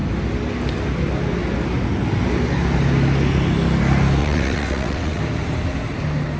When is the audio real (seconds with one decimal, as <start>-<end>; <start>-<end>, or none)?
0.0-4.2; 5.2-6.4